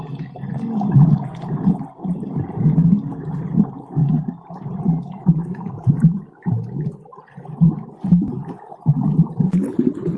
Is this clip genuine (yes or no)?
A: yes